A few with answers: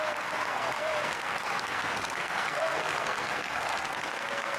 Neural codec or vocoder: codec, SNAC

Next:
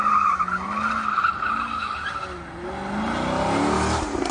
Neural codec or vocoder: none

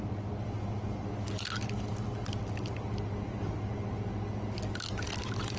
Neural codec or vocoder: none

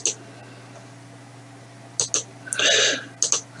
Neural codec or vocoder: none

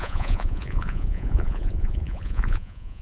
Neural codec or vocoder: vocoder, Vocos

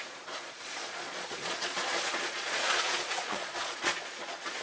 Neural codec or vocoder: vocoder, Vocos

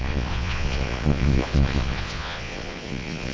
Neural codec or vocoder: vocoder, Vocos